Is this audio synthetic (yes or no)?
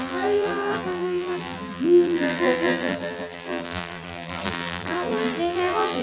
yes